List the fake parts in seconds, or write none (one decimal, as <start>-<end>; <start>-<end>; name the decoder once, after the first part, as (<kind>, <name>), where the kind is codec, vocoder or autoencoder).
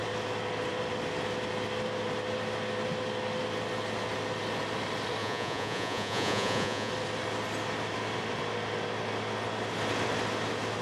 5.2-6.9 (vocoder, Vocos)